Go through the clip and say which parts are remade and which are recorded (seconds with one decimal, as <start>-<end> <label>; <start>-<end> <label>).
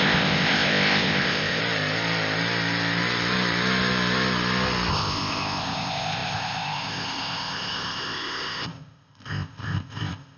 0.0-1.6 remade; 1.6-4.9 recorded; 4.9-10.4 remade